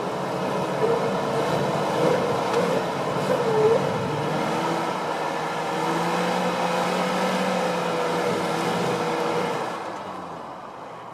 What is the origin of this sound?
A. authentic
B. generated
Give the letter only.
A